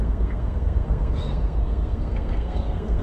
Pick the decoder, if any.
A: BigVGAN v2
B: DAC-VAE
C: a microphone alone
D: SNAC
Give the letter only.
D